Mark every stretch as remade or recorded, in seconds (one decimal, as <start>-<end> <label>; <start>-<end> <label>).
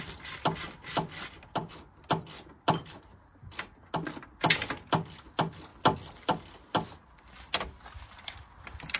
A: 0.0-9.0 recorded